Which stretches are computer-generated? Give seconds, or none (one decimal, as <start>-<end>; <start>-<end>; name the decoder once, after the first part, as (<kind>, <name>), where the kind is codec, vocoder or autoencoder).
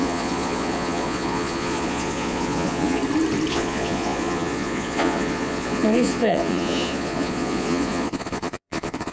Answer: 0.0-3.0 (vocoder, Vocos); 3.5-9.1